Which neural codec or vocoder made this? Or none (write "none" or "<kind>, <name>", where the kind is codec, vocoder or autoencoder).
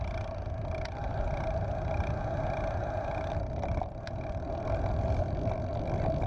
none